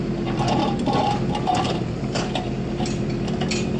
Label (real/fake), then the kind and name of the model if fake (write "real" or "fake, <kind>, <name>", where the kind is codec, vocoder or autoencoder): fake, vocoder, BigVGAN v2